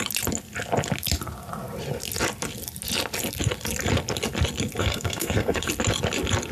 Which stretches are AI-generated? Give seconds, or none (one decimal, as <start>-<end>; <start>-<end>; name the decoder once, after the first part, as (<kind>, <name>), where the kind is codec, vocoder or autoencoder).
4.8-5.7 (codec, SNAC)